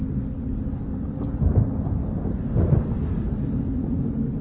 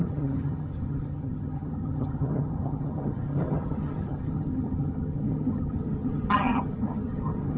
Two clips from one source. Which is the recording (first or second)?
first